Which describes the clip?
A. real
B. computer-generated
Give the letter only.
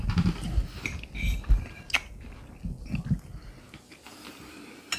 A